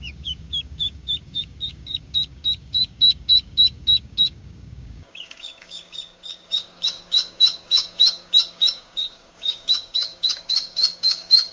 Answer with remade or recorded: remade